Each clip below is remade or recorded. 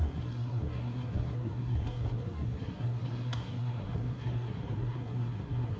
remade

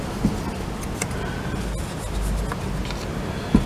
recorded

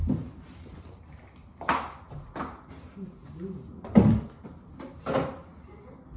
recorded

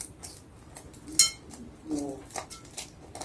recorded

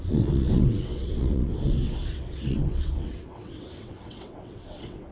remade